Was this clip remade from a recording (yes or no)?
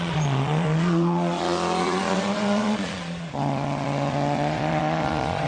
yes